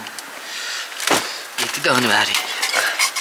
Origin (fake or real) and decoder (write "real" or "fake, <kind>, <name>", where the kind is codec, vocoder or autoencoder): real